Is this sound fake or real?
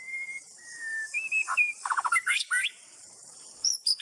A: fake